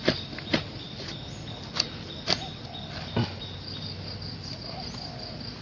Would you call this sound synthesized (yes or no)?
no